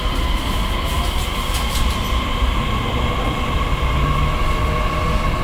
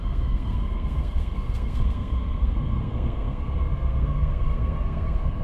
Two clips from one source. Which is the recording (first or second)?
first